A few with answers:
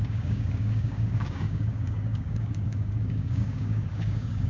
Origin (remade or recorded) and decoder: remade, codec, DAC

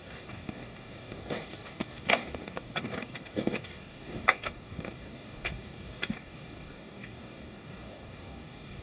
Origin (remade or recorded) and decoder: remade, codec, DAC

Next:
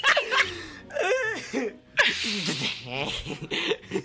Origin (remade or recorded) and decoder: recorded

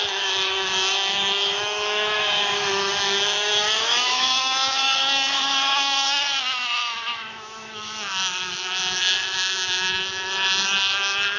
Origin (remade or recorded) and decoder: remade, autoencoder, DAC-VAE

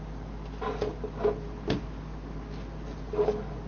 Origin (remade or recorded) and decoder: recorded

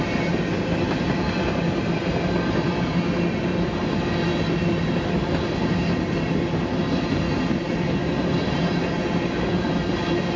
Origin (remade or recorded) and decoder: recorded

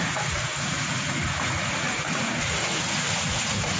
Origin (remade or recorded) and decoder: remade, vocoder, Vocos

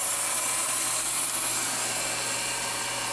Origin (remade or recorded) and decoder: recorded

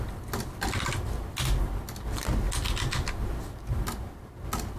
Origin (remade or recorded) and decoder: recorded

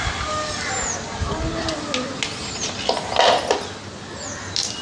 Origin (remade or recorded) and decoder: recorded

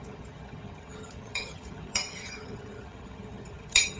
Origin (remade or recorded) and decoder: remade, vocoder, HiFi-GAN